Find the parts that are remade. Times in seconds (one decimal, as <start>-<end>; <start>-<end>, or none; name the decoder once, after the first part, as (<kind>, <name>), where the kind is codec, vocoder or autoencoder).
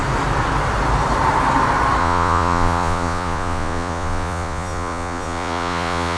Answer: 2.0-6.2 (vocoder, Vocos)